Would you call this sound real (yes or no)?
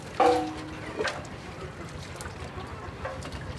yes